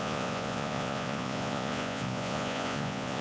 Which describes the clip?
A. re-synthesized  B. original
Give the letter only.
A